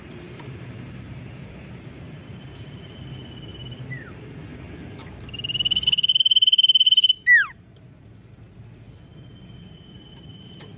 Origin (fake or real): real